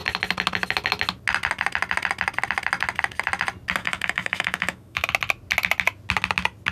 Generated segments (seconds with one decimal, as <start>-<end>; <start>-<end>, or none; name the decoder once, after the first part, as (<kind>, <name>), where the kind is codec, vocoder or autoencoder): 3.8-5.1 (autoencoder, DAC-VAE)